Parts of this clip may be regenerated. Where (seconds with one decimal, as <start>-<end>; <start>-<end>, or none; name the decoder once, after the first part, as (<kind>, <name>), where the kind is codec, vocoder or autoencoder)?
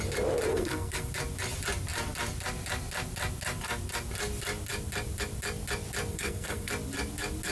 0.5-1.1 (codec, SNAC); 6.1-6.7